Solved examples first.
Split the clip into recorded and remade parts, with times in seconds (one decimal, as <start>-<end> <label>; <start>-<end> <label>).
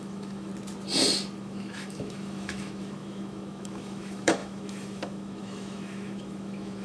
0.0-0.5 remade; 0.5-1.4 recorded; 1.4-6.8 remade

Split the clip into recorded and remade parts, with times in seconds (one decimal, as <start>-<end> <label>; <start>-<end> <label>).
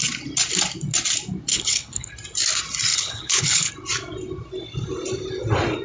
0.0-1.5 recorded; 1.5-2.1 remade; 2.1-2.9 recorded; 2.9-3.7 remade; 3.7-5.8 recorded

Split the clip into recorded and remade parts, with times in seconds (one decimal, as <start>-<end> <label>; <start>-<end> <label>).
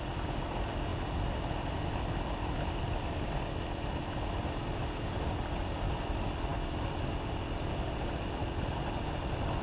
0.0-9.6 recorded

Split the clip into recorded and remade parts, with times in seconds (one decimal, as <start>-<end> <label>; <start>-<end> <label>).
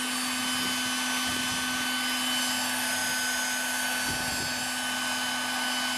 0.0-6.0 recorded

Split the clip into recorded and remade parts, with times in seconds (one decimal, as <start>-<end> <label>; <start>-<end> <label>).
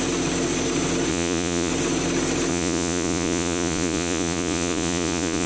0.0-1.1 recorded; 1.1-1.7 remade; 1.7-2.5 recorded; 2.5-5.5 remade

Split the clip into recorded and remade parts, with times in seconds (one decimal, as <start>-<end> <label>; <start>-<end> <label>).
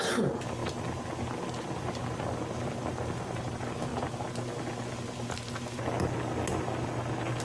0.0-7.4 recorded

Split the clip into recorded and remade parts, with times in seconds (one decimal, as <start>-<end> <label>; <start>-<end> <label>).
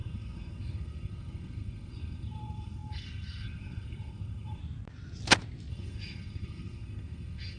0.0-4.6 remade; 4.6-5.7 recorded; 5.7-7.6 remade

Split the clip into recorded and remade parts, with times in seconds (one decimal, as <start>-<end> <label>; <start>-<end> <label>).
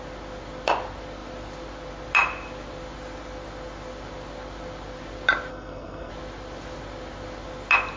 0.0-5.5 recorded; 5.5-6.1 remade; 6.1-8.0 recorded